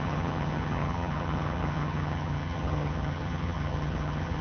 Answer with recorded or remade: remade